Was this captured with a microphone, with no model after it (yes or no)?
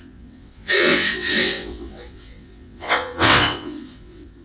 no